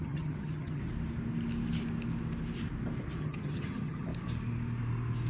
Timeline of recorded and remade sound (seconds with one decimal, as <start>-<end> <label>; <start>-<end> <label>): 0.0-0.8 remade; 0.8-3.2 recorded; 3.2-4.1 remade; 4.1-5.3 recorded